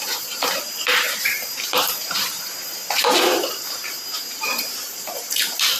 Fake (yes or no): yes